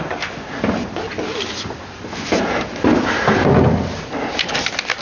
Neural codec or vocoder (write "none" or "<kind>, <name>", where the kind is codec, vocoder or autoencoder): none